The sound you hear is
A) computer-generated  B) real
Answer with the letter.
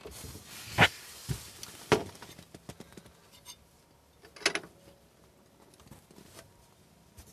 B